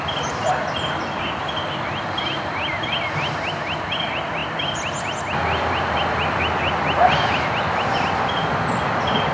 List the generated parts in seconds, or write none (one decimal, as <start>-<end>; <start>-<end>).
none